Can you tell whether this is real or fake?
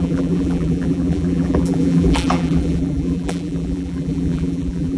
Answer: fake